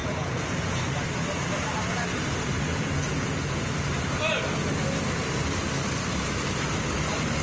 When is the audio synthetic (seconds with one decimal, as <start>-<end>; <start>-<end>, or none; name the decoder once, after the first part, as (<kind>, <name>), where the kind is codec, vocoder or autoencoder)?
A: 0.0-0.8 (vocoder, Vocos); 2.7-3.6